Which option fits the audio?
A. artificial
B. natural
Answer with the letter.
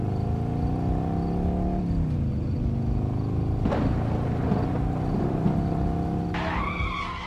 B